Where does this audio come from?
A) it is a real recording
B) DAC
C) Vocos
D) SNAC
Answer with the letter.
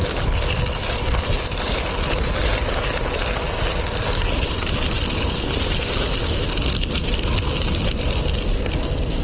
A